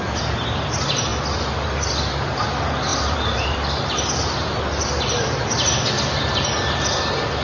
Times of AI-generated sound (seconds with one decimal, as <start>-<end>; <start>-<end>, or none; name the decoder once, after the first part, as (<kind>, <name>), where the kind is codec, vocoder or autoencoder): 2.9-4.6 (vocoder, BigVGAN v2)